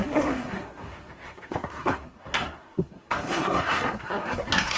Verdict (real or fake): fake